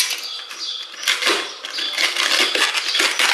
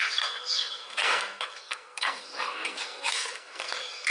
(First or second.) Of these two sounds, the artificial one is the second